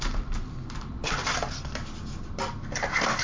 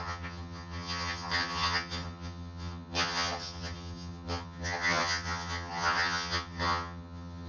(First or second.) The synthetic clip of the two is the second